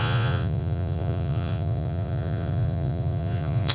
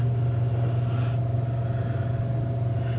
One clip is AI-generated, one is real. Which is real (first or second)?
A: second